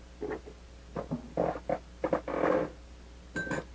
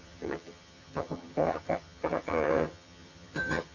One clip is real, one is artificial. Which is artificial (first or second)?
second